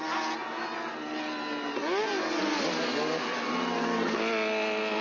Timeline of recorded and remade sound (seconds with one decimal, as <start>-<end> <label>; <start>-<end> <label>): 0.0-5.0 recorded